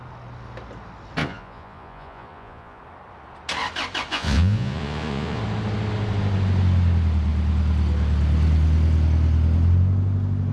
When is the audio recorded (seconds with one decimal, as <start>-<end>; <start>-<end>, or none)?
0.0-1.2; 2.8-4.1; 5.4-10.5